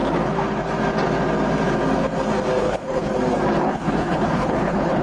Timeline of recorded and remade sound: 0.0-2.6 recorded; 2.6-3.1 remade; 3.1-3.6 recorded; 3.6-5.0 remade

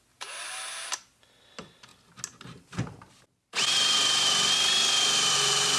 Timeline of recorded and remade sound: 0.0-5.8 recorded

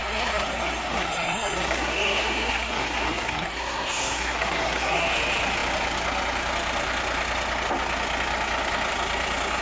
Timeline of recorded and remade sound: 0.0-5.0 remade; 5.0-9.6 recorded

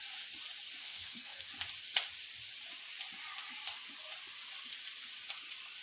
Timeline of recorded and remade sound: 0.0-0.8 recorded; 0.8-1.5 remade; 1.5-5.8 recorded

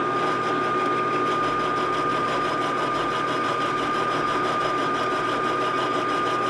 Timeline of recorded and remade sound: 0.0-2.1 recorded; 2.1-6.0 remade; 6.0-6.5 recorded

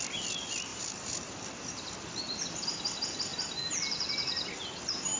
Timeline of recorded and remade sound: 0.0-0.7 recorded; 0.7-1.5 remade; 1.5-5.2 recorded